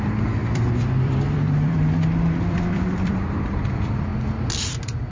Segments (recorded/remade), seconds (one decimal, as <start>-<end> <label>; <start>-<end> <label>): 0.0-4.1 remade; 4.1-5.1 recorded